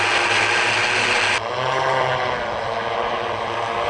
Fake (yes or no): no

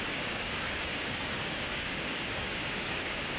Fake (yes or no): yes